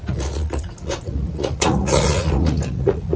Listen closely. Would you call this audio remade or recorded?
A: remade